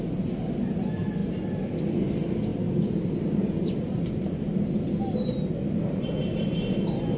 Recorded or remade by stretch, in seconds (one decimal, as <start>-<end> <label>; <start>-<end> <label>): 0.0-7.2 recorded